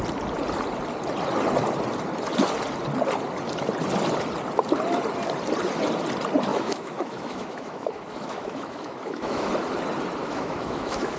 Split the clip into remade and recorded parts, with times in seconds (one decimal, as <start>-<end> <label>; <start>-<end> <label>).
0.0-6.5 recorded; 6.5-9.5 remade; 9.5-10.2 recorded; 10.2-11.2 remade